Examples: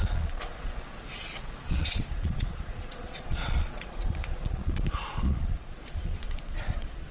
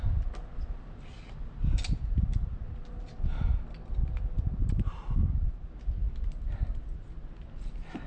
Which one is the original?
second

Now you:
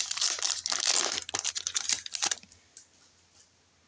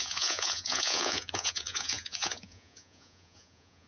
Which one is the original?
first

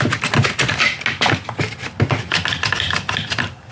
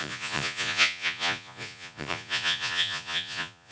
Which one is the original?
first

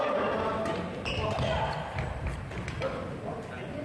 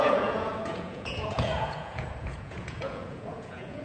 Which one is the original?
first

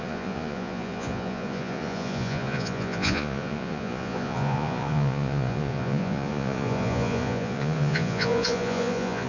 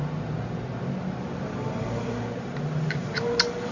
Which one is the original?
second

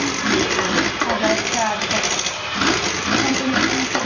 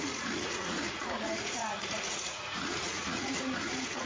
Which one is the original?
first